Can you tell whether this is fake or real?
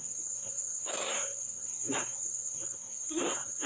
fake